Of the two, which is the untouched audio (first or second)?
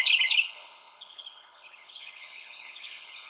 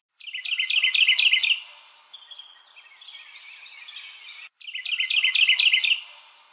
second